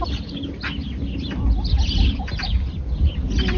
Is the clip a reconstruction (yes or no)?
no